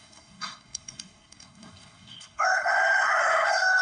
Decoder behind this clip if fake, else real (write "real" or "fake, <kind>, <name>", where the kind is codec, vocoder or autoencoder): fake, codec, SNAC